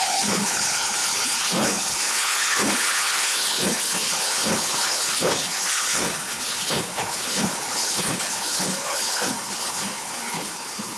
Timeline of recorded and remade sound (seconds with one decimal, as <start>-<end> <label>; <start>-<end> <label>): 0.0-11.0 remade